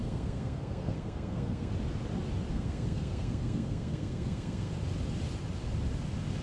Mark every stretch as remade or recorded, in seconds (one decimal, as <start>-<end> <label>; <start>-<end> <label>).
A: 0.0-1.7 remade; 1.7-2.5 recorded; 2.5-4.7 remade; 4.7-6.4 recorded

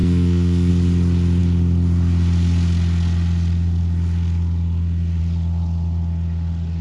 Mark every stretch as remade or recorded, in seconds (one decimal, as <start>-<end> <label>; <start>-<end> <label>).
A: 0.0-0.7 remade; 0.7-6.8 recorded

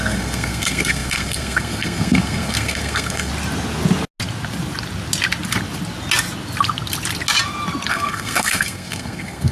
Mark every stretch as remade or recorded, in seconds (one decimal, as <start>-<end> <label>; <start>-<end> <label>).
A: 0.0-3.3 remade; 3.3-7.9 recorded; 7.9-9.5 remade

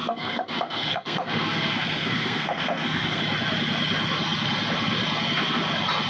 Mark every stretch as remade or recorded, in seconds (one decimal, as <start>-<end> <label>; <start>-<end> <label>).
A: 0.0-3.2 remade; 3.2-6.1 recorded

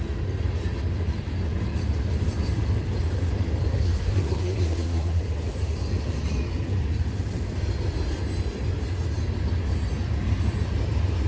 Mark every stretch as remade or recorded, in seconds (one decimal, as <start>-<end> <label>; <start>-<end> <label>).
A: 0.0-3.7 recorded; 3.7-5.2 remade; 5.2-11.3 recorded

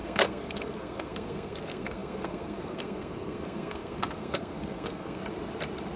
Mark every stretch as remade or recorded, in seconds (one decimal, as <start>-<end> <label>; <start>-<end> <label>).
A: 0.0-5.2 remade; 5.2-6.0 recorded

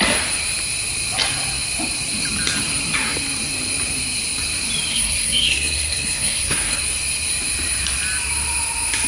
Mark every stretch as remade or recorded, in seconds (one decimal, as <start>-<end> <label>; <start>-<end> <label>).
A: 0.0-4.9 recorded; 4.9-6.8 remade; 6.8-9.1 recorded

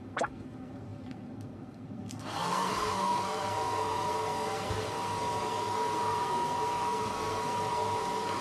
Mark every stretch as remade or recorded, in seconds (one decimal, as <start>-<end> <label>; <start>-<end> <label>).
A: 0.0-8.4 remade